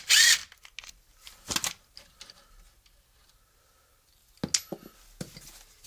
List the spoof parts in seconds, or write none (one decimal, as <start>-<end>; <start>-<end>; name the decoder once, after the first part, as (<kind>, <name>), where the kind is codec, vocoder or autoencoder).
none